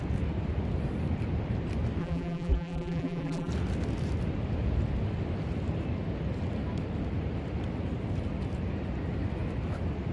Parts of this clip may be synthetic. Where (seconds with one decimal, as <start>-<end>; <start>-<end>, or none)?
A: 2.0-3.5